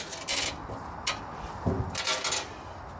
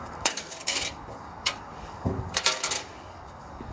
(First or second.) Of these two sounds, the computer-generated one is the second